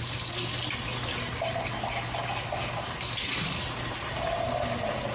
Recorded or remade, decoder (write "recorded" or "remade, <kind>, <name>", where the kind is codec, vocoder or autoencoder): recorded